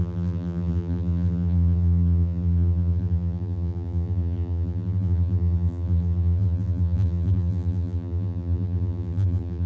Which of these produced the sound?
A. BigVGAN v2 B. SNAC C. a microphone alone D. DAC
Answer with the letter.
A